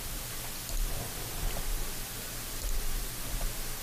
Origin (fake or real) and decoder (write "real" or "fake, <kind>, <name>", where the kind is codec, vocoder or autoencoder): real